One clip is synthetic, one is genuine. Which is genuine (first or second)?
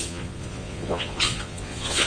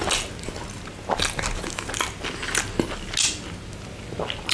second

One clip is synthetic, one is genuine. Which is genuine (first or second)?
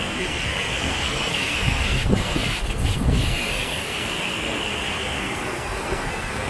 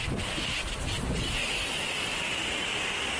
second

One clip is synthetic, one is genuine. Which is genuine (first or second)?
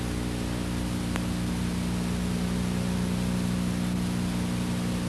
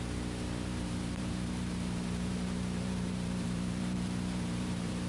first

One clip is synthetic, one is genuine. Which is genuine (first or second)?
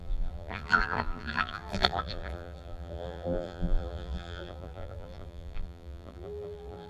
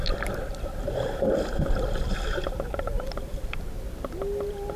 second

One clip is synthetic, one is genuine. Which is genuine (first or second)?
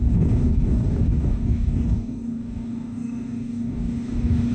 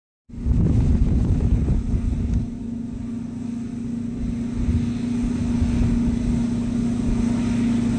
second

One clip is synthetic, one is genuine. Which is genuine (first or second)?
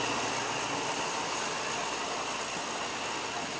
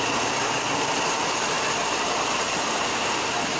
first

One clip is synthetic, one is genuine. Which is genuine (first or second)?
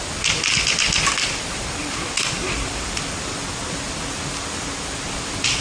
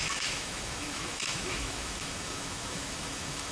first